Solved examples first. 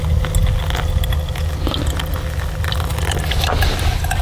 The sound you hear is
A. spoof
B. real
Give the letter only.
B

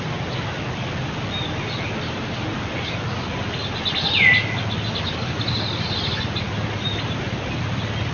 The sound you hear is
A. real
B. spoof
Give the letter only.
A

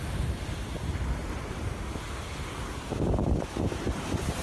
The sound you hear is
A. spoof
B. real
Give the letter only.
B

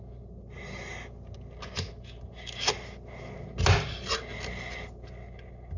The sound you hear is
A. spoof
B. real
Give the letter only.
B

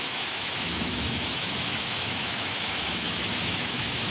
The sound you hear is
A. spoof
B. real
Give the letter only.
A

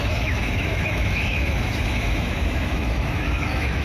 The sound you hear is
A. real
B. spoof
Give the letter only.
B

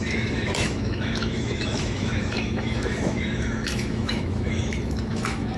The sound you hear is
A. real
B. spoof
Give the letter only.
B